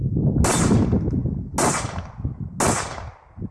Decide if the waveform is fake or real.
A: real